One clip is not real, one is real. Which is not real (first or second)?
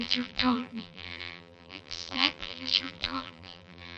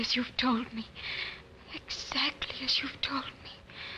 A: first